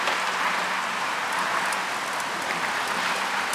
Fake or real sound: real